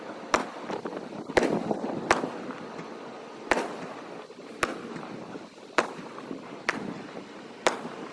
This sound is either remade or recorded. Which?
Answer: recorded